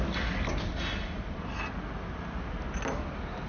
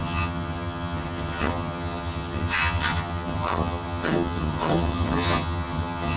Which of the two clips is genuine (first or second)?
first